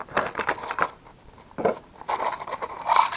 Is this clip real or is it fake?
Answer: real